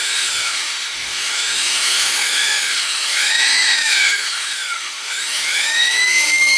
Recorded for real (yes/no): no